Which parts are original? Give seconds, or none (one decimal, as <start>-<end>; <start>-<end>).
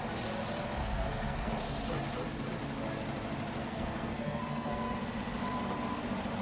0.0-0.8; 1.5-3.6; 4.9-6.4